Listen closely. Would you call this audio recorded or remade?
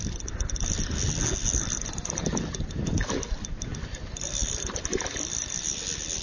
recorded